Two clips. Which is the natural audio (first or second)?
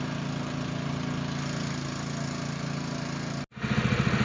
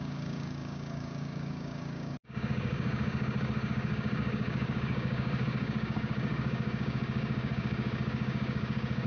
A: first